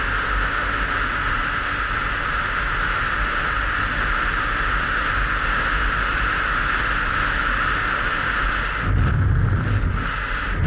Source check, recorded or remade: recorded